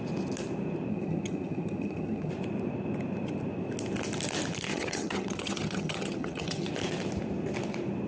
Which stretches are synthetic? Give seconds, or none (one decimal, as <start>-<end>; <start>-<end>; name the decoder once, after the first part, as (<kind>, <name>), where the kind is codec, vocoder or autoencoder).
0.9-2.3 (vocoder, HiFi-GAN); 4.7-6.7